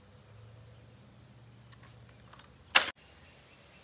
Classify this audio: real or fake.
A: real